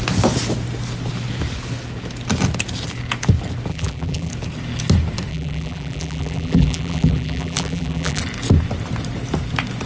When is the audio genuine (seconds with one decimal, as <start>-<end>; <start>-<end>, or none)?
0.0-3.7; 4.3-5.3; 8.2-9.9